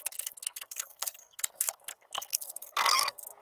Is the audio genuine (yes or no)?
no